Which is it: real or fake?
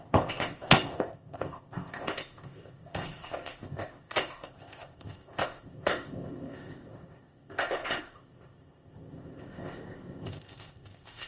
fake